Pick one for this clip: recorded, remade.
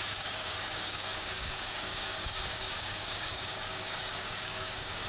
remade